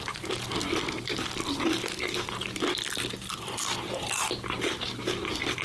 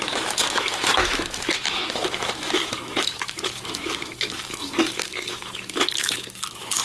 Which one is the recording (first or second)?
first